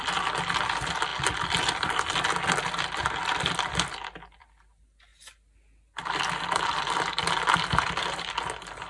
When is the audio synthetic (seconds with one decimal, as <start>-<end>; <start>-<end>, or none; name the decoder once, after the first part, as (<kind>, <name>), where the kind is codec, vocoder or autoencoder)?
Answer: none